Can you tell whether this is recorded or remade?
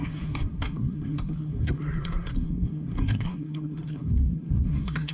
remade